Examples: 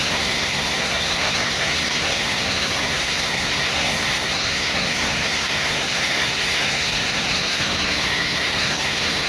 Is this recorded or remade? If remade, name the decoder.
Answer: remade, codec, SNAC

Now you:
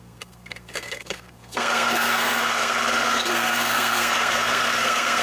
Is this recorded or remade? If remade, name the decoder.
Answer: remade, codec, SNAC